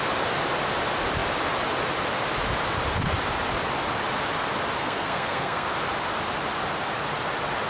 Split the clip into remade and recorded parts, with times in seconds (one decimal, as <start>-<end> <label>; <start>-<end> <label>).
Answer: 0.0-4.8 recorded; 4.8-5.7 remade; 5.7-7.7 recorded